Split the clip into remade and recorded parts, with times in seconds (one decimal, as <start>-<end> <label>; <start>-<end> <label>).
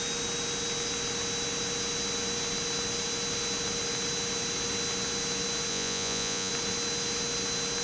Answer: 0.0-5.7 recorded; 5.7-6.5 remade; 6.5-7.8 recorded